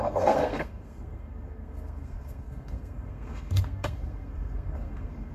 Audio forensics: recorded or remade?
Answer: remade